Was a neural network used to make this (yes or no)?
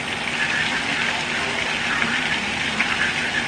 no